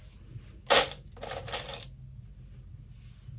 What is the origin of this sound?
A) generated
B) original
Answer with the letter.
B